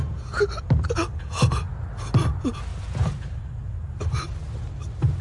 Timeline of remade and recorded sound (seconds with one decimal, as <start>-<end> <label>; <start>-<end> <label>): 0.0-2.7 recorded; 2.7-4.3 remade; 4.3-5.2 recorded